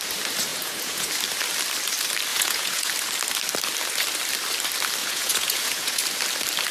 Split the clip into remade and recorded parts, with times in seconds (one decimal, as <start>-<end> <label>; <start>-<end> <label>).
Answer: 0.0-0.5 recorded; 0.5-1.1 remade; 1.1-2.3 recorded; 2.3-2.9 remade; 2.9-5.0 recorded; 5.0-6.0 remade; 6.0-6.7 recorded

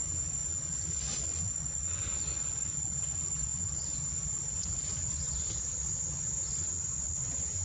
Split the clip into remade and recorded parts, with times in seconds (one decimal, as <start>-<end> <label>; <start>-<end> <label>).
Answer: 0.0-7.6 remade

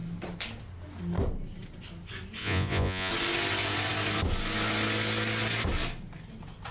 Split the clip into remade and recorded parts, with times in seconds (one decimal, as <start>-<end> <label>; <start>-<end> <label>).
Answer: 0.0-2.4 recorded; 2.4-3.1 remade; 3.1-6.7 recorded

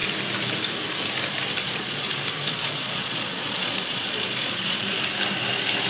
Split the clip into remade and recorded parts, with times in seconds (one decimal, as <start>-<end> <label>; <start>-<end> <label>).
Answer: 0.0-1.6 recorded; 1.6-2.1 remade; 2.1-2.5 recorded; 2.5-5.0 remade; 5.0-5.9 recorded

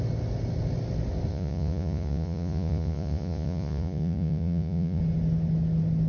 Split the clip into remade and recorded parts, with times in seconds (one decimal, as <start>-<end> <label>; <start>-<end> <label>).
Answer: 0.0-1.3 recorded; 1.3-5.0 remade; 5.0-6.1 recorded

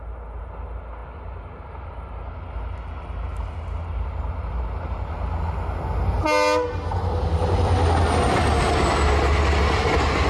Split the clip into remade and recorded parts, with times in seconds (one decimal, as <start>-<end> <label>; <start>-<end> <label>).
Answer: 0.0-10.3 recorded

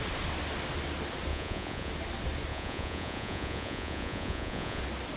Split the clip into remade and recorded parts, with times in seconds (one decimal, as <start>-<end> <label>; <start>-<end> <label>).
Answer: 0.0-1.3 recorded; 1.3-1.9 remade; 1.9-2.5 recorded; 2.5-4.8 remade; 4.8-5.2 recorded